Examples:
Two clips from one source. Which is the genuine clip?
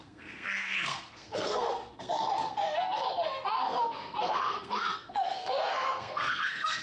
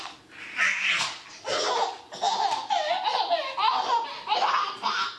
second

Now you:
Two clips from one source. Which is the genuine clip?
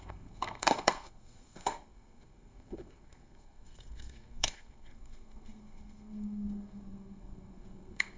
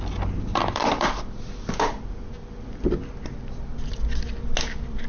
second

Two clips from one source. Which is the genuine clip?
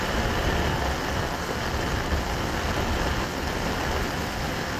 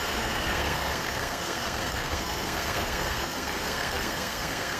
first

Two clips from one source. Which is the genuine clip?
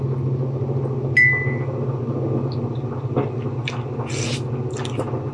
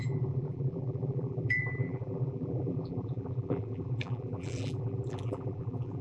first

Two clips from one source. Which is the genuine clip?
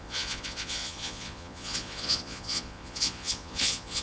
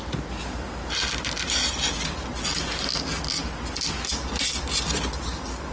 second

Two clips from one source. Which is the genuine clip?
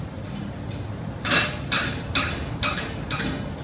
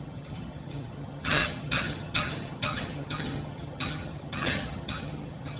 first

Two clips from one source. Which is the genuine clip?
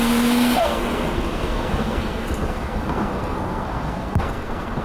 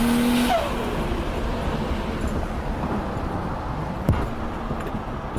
second